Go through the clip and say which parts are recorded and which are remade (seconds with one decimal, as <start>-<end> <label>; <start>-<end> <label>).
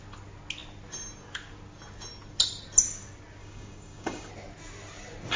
0.0-3.4 recorded; 3.4-4.3 remade; 4.3-5.4 recorded